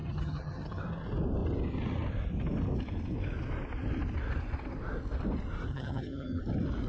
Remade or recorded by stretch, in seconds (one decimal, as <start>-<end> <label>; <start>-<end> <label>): 0.0-0.8 remade; 0.8-5.7 recorded; 5.7-6.4 remade; 6.4-6.9 recorded